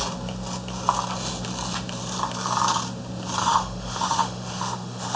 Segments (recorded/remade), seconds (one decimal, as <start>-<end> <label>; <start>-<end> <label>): 0.0-3.4 recorded; 3.4-5.2 remade